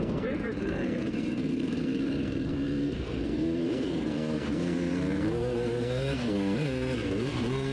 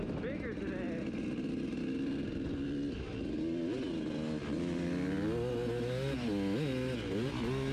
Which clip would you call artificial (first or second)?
first